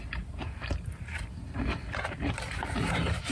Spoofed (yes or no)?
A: no